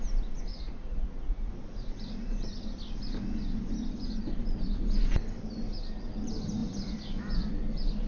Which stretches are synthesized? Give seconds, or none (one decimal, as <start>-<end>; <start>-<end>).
0.5-1.5; 6.6-7.5